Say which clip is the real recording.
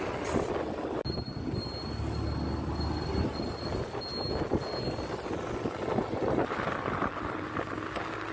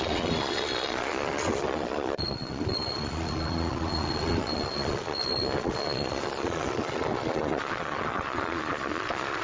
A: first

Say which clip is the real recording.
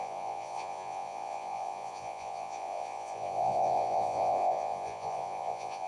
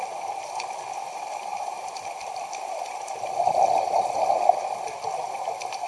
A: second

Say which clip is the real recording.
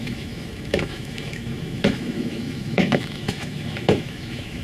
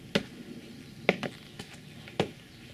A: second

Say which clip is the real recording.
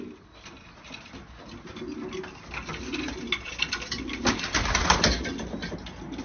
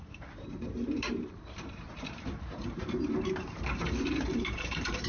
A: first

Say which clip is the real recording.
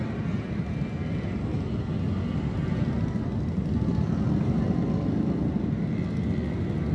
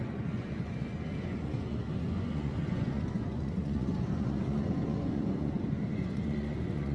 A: first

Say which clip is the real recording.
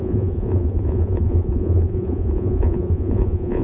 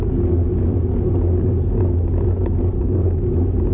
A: second